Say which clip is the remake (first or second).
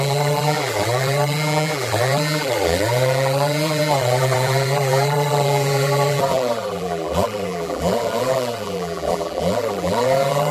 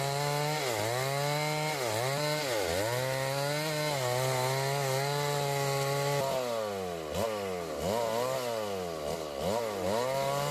first